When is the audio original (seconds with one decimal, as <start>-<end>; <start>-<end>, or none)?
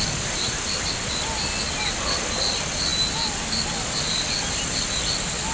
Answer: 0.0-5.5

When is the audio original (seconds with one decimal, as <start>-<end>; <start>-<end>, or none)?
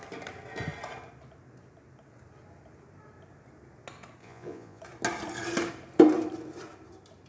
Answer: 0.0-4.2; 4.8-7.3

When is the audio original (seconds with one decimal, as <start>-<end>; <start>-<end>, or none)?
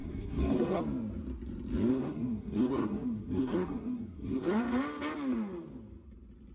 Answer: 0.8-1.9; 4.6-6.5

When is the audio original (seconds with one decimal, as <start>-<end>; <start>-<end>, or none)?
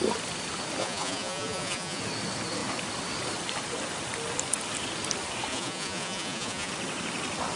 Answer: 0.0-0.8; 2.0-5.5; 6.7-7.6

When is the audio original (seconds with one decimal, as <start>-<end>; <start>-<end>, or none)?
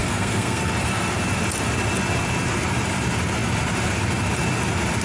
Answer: 1.2-5.0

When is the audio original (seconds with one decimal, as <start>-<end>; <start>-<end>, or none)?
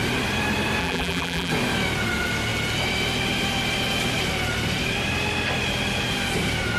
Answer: 0.0-0.8; 1.5-6.8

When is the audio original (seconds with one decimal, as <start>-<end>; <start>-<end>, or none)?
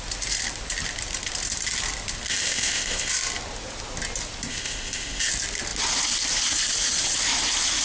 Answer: 0.0-2.3; 3.1-4.5; 5.3-7.8